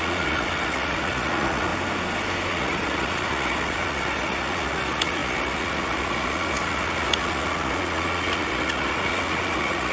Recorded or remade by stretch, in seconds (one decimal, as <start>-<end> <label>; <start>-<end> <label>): 0.0-1.7 remade; 1.7-2.5 recorded; 2.5-9.9 remade